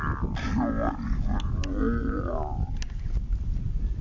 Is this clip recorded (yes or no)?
yes